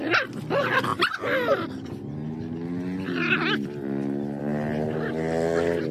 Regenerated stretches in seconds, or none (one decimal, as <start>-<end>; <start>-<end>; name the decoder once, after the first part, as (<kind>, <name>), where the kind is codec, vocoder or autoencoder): none